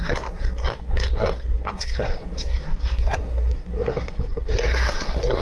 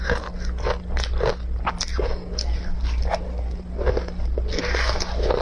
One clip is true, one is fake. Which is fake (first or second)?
first